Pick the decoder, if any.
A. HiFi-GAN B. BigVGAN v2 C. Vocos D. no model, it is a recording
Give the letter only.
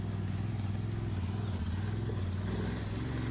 D